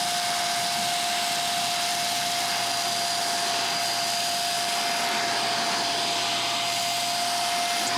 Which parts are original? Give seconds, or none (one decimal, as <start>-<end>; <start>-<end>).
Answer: 0.0-8.0